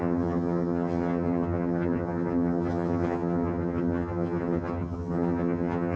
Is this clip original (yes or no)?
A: no